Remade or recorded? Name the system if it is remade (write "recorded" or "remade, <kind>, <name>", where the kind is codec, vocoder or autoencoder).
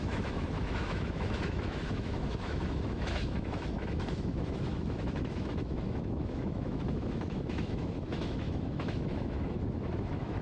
remade, autoencoder, DAC-VAE